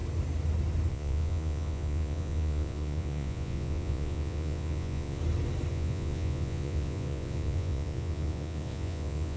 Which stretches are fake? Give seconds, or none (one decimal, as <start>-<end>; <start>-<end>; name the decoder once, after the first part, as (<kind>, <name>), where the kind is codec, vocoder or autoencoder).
0.9-5.2 (vocoder, Vocos); 5.7-9.4